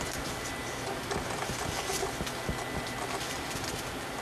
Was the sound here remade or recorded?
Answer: recorded